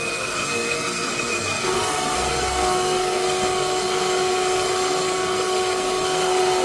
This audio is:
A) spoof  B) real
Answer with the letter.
A